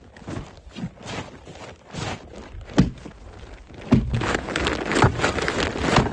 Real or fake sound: real